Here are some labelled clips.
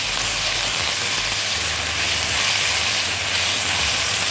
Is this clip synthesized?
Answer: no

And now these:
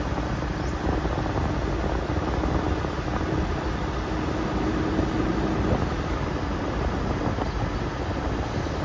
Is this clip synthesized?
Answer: no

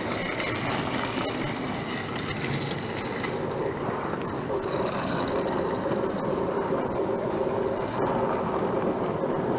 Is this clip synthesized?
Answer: no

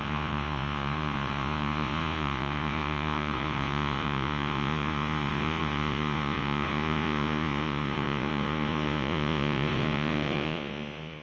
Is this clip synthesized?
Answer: yes